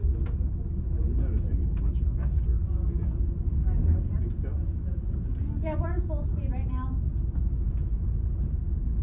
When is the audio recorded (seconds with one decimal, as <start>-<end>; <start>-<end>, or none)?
0.0-9.0